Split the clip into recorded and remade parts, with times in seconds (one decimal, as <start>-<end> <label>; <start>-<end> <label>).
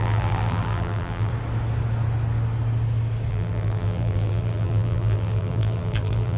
0.0-1.3 remade; 1.3-3.3 recorded; 3.3-6.4 remade